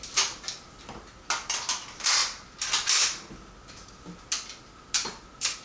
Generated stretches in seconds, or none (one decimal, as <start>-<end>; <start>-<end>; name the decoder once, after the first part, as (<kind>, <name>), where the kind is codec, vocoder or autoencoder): none